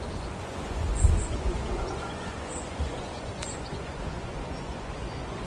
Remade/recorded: remade